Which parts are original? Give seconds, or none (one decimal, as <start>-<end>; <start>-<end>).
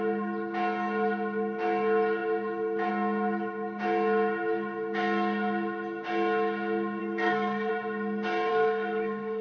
0.0-7.0; 7.7-8.5